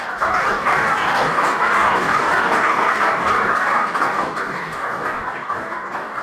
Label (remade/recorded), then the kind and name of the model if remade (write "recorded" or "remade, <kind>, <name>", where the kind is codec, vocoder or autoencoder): remade, codec, DAC